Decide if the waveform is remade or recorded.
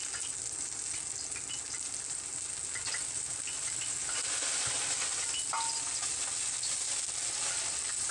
recorded